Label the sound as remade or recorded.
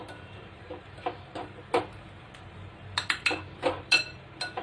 remade